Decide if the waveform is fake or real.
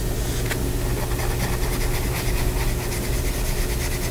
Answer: real